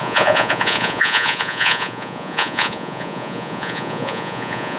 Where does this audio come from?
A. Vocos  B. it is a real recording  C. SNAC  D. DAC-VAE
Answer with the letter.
A